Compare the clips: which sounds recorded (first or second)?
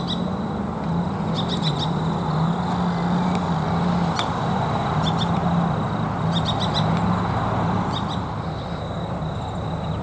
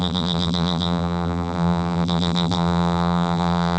first